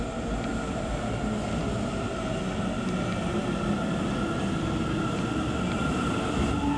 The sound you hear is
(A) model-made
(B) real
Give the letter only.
B